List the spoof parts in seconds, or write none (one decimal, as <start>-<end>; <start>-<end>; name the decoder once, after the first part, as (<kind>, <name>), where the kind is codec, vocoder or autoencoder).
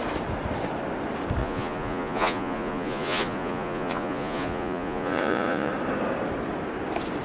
1.4-5.7 (vocoder, Vocos)